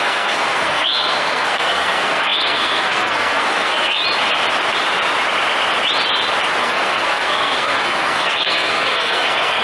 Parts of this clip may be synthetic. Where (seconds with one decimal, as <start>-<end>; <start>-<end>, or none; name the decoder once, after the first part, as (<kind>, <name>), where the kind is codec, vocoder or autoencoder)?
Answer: 0.0-4.0 (codec, SNAC); 6.6-9.6